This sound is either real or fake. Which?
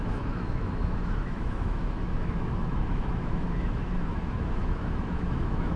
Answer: fake